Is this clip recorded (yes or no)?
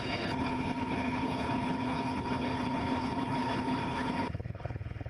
no